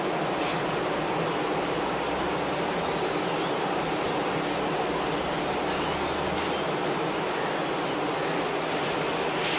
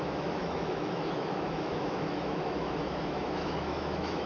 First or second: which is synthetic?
second